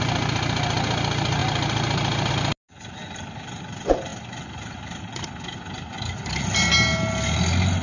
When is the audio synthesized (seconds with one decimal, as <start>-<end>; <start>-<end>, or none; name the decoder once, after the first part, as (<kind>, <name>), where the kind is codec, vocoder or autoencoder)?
4.1-5.2 (vocoder, BigVGAN v2)